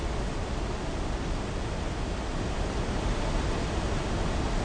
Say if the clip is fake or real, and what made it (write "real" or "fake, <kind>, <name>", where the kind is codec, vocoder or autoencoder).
real